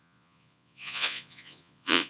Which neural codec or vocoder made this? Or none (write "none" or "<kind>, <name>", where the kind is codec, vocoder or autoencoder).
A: vocoder, Vocos